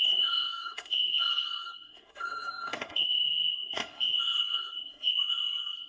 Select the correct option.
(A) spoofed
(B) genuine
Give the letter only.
A